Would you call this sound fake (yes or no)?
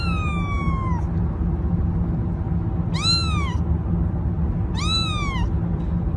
no